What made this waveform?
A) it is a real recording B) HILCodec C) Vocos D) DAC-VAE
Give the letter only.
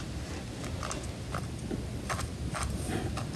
A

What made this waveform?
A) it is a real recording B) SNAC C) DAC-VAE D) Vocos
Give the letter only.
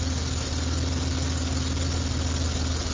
A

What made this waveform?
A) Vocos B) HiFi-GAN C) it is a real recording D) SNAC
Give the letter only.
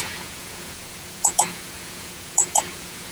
A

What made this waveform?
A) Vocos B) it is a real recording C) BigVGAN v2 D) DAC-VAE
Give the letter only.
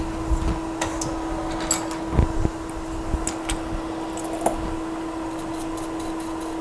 B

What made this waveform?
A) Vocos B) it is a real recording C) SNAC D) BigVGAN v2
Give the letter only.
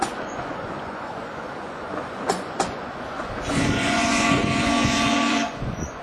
A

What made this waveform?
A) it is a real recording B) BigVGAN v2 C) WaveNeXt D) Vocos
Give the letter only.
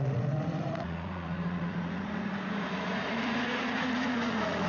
D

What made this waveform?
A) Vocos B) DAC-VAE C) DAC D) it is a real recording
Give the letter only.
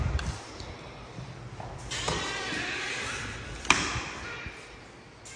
D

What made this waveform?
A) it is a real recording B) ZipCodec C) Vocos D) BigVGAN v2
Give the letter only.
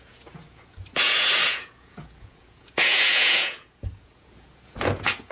C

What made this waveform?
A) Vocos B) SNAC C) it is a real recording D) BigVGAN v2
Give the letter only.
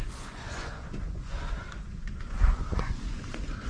A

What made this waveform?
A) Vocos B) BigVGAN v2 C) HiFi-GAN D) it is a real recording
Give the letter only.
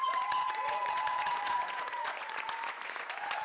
A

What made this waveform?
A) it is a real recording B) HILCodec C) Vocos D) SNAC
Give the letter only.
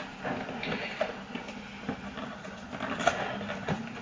A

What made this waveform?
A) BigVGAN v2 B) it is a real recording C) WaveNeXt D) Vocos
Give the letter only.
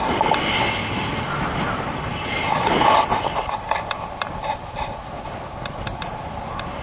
B